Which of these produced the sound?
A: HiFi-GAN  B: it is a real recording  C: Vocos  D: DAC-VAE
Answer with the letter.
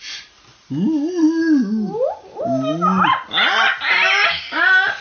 B